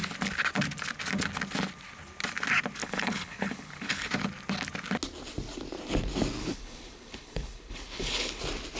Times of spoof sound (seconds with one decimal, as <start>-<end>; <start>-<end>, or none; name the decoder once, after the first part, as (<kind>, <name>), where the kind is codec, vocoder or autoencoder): 2.8-4.1 (codec, HILCodec); 6.4-8.4